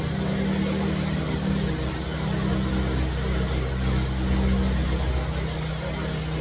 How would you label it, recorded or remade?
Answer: recorded